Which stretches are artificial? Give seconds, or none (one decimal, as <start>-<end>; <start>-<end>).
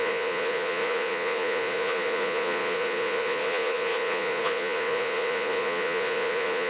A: 0.0-6.7